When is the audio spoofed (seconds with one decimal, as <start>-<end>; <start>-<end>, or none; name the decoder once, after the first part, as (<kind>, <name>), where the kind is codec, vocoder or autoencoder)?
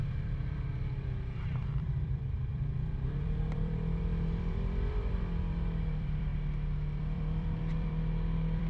0.0-6.3 (vocoder, BigVGAN v2); 7.0-8.7